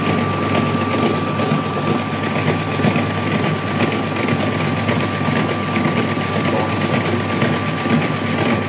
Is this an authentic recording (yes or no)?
yes